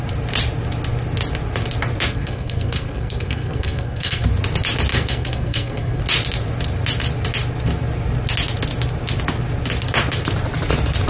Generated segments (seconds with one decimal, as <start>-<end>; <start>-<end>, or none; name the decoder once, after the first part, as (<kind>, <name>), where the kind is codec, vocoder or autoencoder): 2.1-4.3 (codec, SNAC); 4.9-6.0

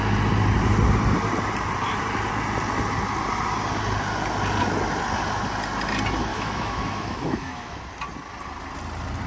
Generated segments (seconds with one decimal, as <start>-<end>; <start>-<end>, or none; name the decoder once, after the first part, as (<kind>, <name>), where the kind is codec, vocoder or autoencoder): 6.3-7.8 (autoencoder, DAC-VAE)

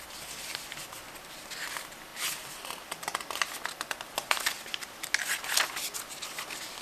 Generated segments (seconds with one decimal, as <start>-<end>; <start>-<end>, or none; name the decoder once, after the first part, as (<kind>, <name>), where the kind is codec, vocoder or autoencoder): 2.1-5.1 (vocoder, BigVGAN v2)

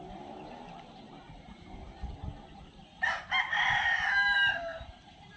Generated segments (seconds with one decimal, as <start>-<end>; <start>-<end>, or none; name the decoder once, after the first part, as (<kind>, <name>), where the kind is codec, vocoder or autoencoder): 0.0-1.3 (vocoder, BigVGAN v2); 4.5-5.4

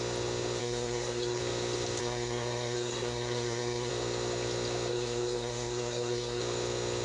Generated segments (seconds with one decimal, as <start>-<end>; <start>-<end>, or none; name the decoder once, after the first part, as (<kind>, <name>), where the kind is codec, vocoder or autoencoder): 0.6-1.4 (codec, SNAC); 2.0-3.9; 4.9-6.4

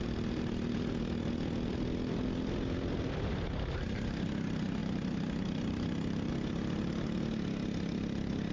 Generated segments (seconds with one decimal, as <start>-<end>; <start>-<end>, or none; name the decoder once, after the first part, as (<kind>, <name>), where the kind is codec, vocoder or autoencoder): 4.8-6.3 (vocoder, BigVGAN v2)

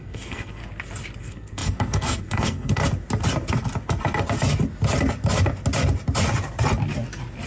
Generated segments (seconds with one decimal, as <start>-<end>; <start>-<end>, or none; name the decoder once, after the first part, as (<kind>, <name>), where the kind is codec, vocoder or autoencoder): 0.0-0.6 (codec, SNAC); 1.2-2.8